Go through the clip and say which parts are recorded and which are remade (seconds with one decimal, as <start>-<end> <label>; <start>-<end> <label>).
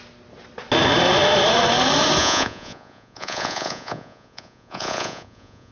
0.0-2.2 recorded; 2.2-5.7 remade